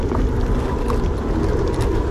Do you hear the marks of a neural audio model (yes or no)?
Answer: no